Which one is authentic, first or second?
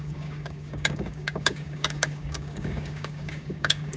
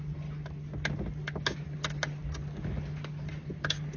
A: second